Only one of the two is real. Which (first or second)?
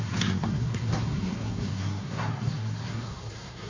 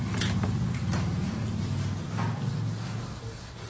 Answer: second